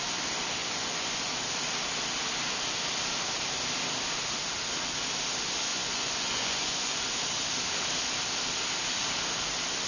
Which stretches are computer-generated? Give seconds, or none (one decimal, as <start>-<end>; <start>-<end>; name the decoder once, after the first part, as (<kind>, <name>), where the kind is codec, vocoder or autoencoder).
0.6-1.2 (vocoder, Vocos); 5.7-7.0